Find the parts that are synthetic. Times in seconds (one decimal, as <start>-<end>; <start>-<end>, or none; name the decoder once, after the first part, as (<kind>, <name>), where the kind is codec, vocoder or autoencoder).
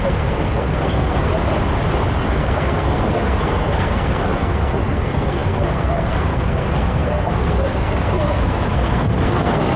0.0-1.3 (codec, SNAC); 2.2-9.8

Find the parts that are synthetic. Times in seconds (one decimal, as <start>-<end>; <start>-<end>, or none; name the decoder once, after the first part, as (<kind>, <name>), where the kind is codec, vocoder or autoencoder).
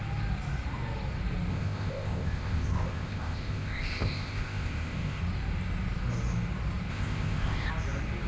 1.5-5.2 (codec, ZipCodec); 6.9-7.7